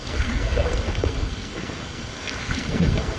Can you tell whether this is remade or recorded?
remade